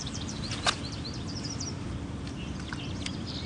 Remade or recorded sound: recorded